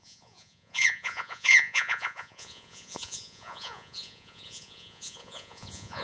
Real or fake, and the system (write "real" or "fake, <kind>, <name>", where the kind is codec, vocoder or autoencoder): fake, vocoder, Vocos